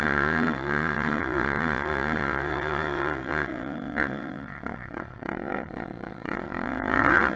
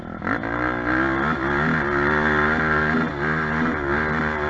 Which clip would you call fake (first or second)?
first